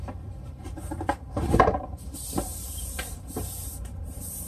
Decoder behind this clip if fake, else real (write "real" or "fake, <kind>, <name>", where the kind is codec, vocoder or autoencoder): fake, vocoder, BigVGAN v2